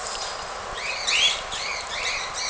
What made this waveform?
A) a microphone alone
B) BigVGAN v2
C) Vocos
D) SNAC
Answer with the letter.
A